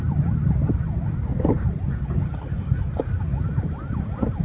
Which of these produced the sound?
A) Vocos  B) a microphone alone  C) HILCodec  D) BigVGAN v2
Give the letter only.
B